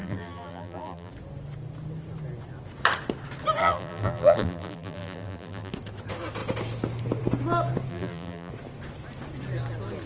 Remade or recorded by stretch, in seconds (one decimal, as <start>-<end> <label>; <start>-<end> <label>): 0.0-1.1 remade; 1.1-3.6 recorded; 3.6-5.7 remade; 5.7-7.9 recorded; 7.9-8.5 remade; 8.5-10.1 recorded